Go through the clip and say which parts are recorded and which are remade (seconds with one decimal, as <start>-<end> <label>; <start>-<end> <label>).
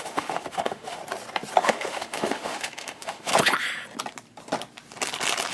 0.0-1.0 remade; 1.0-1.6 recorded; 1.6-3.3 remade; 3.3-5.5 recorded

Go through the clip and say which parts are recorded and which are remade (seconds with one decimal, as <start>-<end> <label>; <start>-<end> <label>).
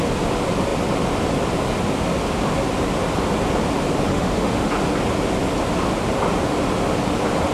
0.0-4.1 recorded; 4.1-4.7 remade; 4.7-7.5 recorded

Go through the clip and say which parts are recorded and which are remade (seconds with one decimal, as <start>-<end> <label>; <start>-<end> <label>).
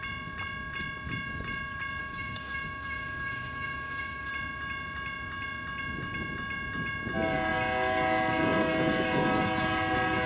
0.0-2.0 recorded; 2.0-4.3 remade; 4.3-10.3 recorded